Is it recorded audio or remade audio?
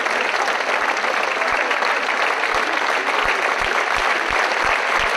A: recorded